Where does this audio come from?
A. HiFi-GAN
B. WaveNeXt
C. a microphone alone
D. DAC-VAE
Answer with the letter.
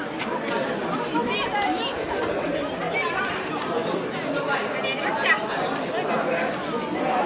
C